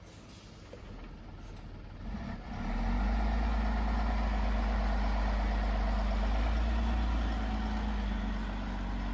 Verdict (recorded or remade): recorded